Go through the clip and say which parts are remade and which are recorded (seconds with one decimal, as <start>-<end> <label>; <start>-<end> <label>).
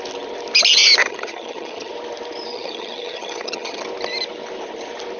0.0-1.0 recorded; 1.0-1.9 remade; 1.9-2.5 recorded; 2.5-3.8 remade; 3.8-5.2 recorded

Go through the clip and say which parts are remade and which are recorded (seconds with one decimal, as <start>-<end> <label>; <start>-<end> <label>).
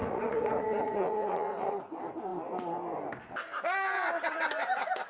0.0-1.8 remade; 1.8-5.1 recorded